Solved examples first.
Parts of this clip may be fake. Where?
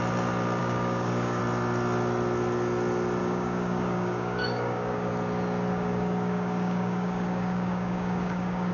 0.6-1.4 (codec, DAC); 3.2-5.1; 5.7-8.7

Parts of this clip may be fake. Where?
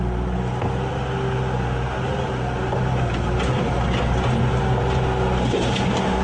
none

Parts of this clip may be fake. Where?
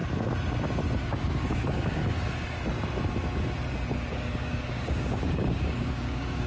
1.0-2.0 (codec, DAC); 4.1-6.5